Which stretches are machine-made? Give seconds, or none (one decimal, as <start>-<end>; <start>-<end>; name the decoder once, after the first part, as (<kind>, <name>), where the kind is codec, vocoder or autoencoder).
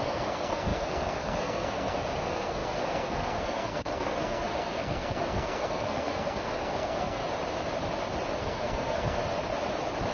0.0-7.2 (codec, SNAC); 8.4-9.2